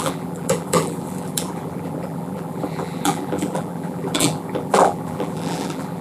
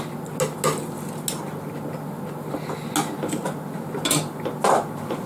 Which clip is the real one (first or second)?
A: second